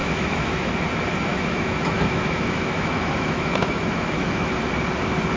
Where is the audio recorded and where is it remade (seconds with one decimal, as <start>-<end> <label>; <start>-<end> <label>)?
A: 0.0-0.7 remade; 0.7-1.3 recorded; 1.3-4.5 remade; 4.5-5.4 recorded